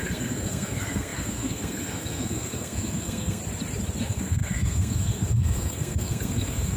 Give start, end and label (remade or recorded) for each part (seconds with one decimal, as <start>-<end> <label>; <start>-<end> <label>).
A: 0.0-3.4 remade; 3.4-4.0 recorded; 4.0-6.8 remade